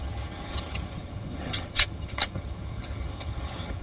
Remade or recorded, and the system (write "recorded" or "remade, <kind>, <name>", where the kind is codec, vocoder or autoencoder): remade, vocoder, HiFi-GAN